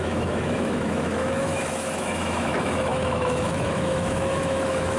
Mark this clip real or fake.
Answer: fake